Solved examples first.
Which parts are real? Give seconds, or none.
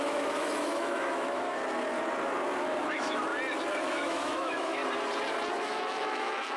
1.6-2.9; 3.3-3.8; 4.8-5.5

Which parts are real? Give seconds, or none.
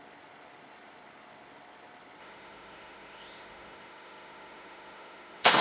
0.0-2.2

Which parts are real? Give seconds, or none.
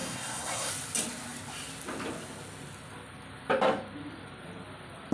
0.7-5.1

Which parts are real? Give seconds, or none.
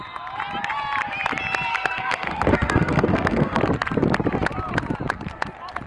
0.0-1.7; 3.6-5.9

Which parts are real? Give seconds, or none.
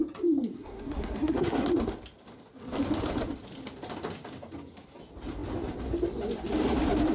0.0-0.5; 1.7-7.1